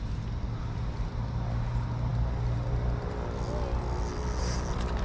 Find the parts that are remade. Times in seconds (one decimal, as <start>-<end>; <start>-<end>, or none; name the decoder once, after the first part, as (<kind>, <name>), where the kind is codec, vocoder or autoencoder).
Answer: none